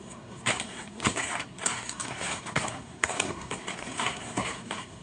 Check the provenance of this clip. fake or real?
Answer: fake